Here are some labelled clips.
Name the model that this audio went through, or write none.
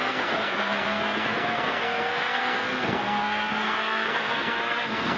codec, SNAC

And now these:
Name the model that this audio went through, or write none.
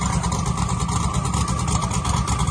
none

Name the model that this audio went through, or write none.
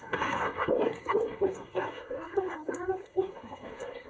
codec, SNAC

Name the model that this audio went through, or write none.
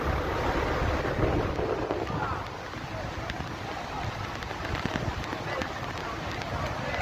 none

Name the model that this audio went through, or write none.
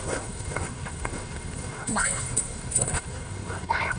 codec, SNAC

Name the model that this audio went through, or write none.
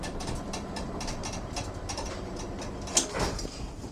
none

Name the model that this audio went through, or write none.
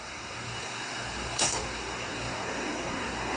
codec, SNAC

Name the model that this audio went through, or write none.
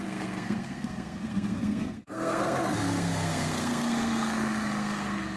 codec, SNAC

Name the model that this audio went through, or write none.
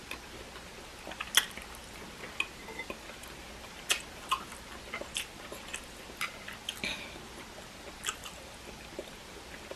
none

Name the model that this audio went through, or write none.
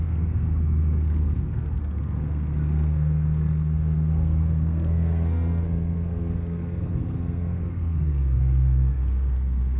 codec, SNAC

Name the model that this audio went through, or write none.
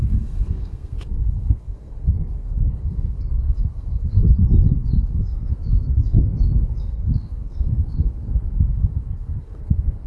codec, SNAC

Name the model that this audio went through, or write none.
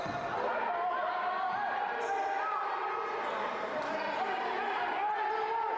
none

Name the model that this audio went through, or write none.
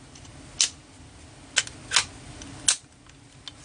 none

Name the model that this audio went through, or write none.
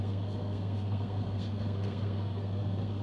codec, SNAC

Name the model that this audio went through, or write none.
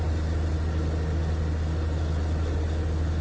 none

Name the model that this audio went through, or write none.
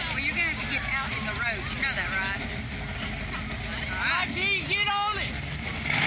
none